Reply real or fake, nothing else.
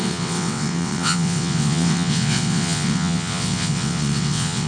fake